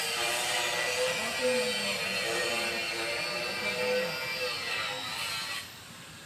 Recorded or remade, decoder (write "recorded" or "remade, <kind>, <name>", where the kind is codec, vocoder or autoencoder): recorded